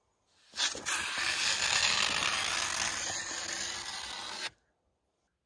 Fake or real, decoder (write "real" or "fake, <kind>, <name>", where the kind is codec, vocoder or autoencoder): real